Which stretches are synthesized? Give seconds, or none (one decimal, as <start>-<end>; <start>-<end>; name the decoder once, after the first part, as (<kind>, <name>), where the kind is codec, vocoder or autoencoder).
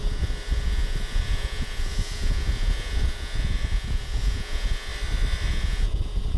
0.0-4.9 (vocoder, Vocos); 5.5-6.4